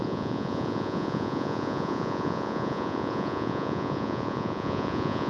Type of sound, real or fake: fake